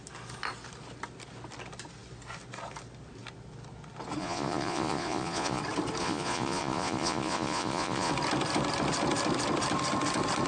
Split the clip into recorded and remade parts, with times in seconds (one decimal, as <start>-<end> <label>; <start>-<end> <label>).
0.0-4.2 recorded; 4.2-5.6 remade; 5.6-6.0 recorded; 6.0-8.1 remade; 8.1-10.5 recorded